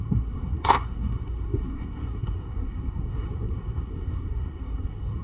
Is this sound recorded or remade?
remade